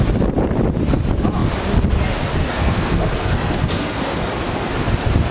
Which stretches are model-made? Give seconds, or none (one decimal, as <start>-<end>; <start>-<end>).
2.4-4.2